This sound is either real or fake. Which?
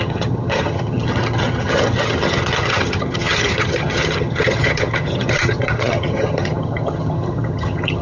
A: fake